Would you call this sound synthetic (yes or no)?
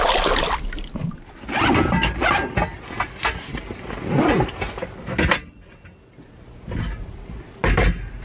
no